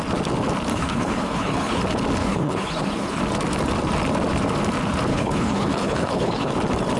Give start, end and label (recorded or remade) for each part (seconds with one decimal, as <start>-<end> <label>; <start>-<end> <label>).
0.0-0.7 recorded; 0.7-1.8 remade; 1.8-2.2 recorded; 2.2-3.2 remade; 3.2-5.1 recorded; 5.1-6.5 remade; 6.5-7.0 recorded